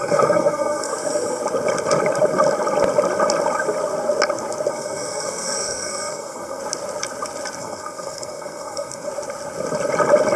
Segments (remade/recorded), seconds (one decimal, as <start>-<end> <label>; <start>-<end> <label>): 0.0-0.9 remade; 0.9-4.7 recorded; 4.7-6.6 remade; 6.6-7.6 recorded; 7.6-9.1 remade; 9.1-10.4 recorded